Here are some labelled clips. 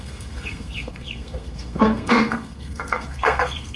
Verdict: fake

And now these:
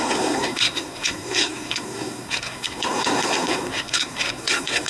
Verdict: fake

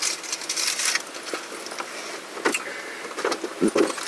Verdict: real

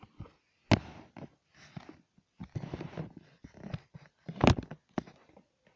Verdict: real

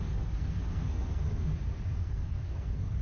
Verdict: fake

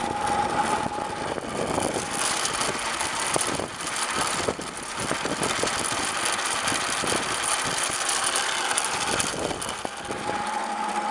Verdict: real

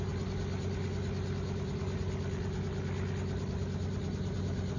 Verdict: real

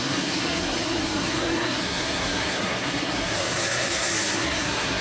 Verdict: fake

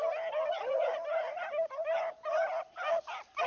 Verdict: real